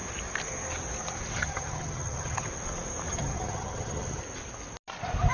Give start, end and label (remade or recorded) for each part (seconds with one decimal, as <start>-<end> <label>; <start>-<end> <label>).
0.0-1.3 recorded; 1.3-2.5 remade; 2.5-3.1 recorded; 3.1-4.2 remade; 4.2-5.3 recorded